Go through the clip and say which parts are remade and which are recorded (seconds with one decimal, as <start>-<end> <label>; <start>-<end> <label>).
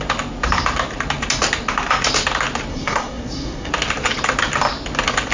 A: 0.0-2.7 recorded; 2.7-3.7 remade; 3.7-5.3 recorded